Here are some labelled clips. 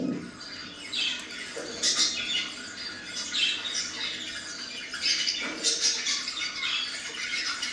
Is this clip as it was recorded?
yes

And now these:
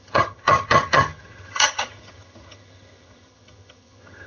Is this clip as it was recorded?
no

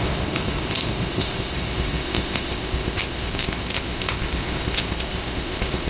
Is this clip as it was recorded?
no